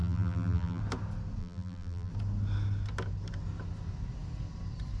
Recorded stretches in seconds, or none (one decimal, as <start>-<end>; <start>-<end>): 0.8-1.4; 2.1-5.0